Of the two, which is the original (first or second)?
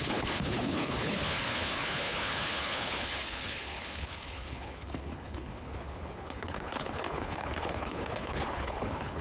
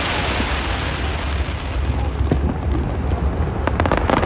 second